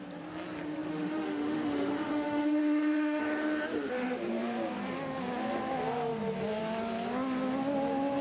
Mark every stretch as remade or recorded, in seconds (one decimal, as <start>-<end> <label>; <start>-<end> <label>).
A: 0.0-0.9 recorded; 0.9-3.2 remade; 3.2-8.2 recorded